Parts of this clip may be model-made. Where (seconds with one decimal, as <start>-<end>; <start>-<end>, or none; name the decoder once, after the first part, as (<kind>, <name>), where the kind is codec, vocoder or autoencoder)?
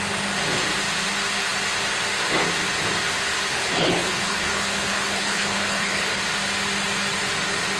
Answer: 3.5-6.2 (codec, HILCodec)